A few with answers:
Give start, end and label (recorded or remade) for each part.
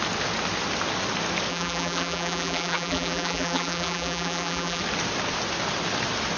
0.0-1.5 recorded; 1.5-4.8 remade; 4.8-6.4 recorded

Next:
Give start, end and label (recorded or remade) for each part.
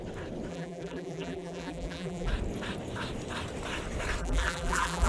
0.0-0.5 recorded; 0.5-2.3 remade; 2.3-4.2 recorded; 4.2-5.1 remade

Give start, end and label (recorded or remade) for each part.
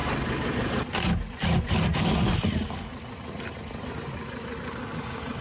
0.0-5.4 recorded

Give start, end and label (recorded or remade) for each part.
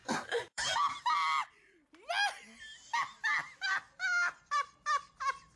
0.0-1.0 remade; 1.0-5.6 recorded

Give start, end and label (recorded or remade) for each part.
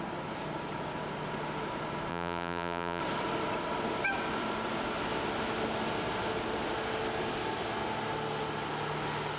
0.0-2.1 recorded; 2.1-3.0 remade; 3.0-9.4 recorded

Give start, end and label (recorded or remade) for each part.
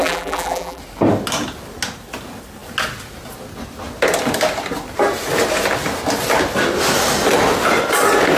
0.0-0.8 remade; 0.8-8.4 recorded